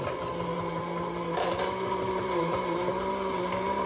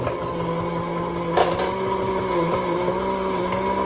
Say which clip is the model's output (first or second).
first